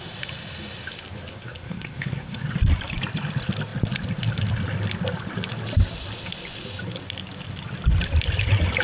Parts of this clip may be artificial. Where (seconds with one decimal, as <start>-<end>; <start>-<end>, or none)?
1.3-2.5